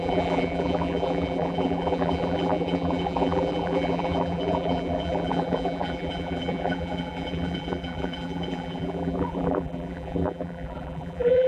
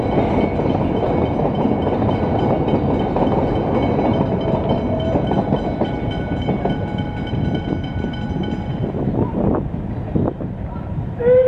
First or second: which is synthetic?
first